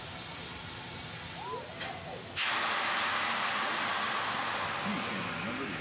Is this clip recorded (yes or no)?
yes